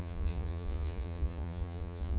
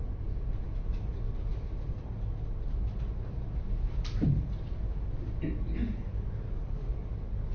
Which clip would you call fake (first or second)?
first